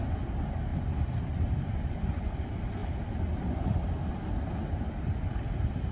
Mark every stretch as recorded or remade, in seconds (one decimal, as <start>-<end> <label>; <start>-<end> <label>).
0.0-5.9 recorded